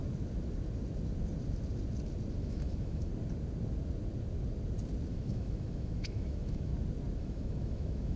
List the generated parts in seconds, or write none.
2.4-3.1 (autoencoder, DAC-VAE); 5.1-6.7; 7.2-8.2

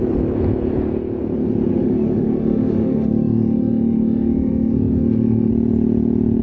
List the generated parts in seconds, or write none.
1.7-5.5 (autoencoder, DAC-VAE)

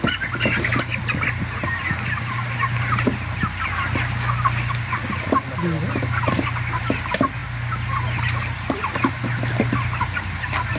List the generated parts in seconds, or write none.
none

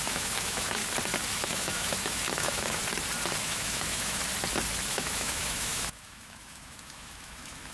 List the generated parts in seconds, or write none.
0.0-0.8 (autoencoder, DAC-VAE); 1.3-2.8; 3.4-4.2; 4.9-7.7

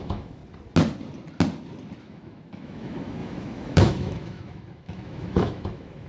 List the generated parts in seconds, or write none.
0.0-0.4 (autoencoder, DAC-VAE); 2.0-6.1